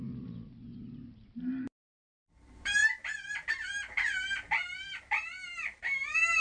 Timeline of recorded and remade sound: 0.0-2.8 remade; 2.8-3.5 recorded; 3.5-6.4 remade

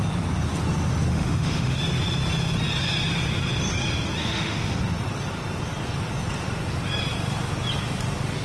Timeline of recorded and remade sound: 0.0-1.1 recorded; 1.1-1.8 remade; 1.8-4.2 recorded; 4.2-4.8 remade; 4.8-8.4 recorded